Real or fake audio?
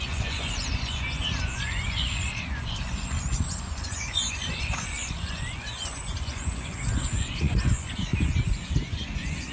fake